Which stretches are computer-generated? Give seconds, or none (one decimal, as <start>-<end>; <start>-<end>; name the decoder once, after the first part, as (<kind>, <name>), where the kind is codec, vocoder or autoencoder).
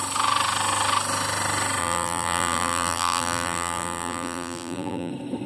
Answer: 1.8-5.1 (vocoder, BigVGAN v2)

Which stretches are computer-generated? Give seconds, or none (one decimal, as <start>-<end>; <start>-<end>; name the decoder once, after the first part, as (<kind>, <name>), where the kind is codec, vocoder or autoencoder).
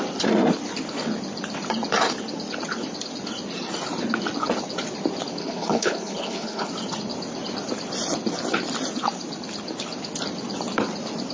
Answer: 5.4-6.7 (codec, HILCodec)